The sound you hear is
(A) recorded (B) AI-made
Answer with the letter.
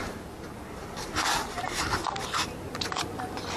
B